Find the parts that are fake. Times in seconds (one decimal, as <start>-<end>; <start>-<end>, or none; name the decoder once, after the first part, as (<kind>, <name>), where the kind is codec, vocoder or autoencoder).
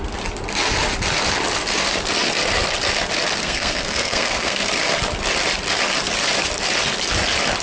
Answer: 3.4-4.7 (codec, SNAC)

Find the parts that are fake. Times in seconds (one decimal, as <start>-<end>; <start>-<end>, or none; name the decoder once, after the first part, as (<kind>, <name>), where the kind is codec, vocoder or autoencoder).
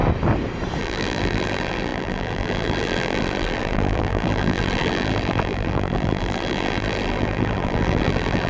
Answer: 0.8-8.5 (vocoder, BigVGAN v2)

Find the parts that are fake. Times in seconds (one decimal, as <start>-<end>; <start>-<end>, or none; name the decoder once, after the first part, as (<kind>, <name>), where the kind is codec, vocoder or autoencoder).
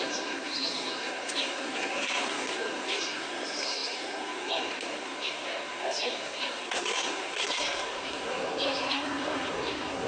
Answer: 0.0-10.1 (codec, SNAC)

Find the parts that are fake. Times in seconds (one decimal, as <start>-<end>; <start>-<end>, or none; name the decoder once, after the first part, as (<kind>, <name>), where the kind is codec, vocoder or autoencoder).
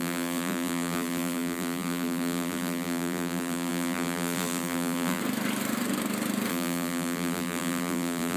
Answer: 0.0-5.2 (vocoder, BigVGAN v2); 6.5-8.4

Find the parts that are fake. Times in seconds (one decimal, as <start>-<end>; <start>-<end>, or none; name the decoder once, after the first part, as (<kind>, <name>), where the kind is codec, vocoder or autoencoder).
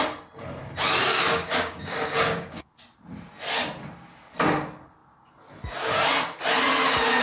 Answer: 1.0-2.7 (codec, DAC)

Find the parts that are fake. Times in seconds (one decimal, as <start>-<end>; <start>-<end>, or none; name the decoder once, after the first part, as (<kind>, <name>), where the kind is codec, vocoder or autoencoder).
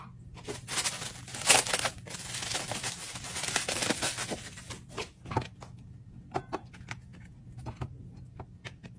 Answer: none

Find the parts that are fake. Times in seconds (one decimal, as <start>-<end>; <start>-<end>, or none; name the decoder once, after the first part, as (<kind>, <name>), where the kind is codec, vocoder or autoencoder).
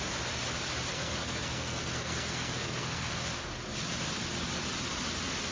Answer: 0.9-3.1 (codec, SNAC)